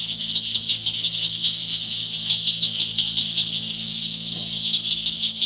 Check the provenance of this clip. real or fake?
fake